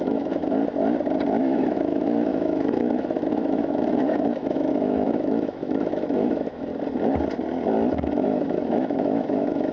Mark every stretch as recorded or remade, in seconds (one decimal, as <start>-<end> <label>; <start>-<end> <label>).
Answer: 0.0-0.4 remade; 0.4-1.4 recorded; 1.4-6.7 remade; 6.7-7.9 recorded; 7.9-9.7 remade